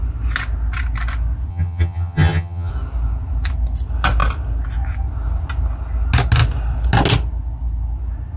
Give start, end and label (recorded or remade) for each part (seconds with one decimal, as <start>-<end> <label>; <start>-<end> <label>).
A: 0.0-1.5 recorded; 1.5-2.7 remade; 2.7-8.4 recorded